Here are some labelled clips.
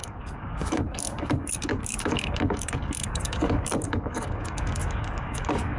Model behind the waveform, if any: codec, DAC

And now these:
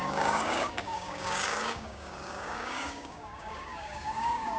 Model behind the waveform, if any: codec, DAC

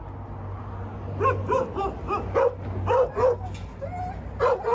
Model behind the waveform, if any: none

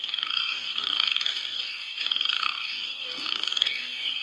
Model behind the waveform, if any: codec, DAC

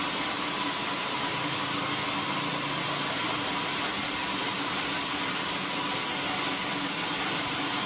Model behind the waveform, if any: none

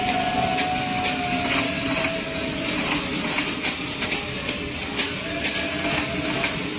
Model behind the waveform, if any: none